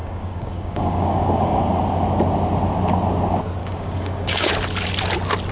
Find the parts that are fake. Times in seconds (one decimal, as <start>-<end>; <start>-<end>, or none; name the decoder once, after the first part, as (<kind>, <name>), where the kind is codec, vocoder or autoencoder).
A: 0.0-1.8 (codec, DAC); 3.6-4.5